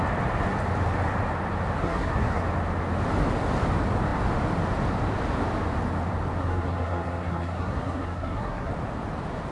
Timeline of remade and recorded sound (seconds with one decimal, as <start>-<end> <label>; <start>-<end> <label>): 0.0-1.8 recorded; 1.8-2.4 remade; 2.4-6.4 recorded; 6.4-8.7 remade; 8.7-9.5 recorded